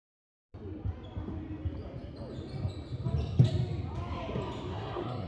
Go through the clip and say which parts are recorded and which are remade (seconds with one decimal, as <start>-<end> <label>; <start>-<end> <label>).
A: 0.0-4.7 recorded; 4.7-5.3 remade